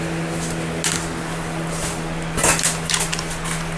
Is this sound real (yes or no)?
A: yes